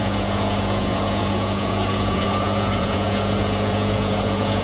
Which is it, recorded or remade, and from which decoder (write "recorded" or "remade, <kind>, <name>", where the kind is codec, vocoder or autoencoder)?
remade, vocoder, Vocos